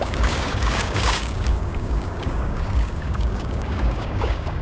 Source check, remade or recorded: remade